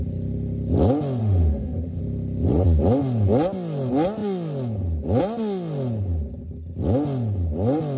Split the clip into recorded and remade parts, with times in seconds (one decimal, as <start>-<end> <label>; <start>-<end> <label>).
0.0-1.2 recorded; 1.2-2.0 remade; 2.0-8.0 recorded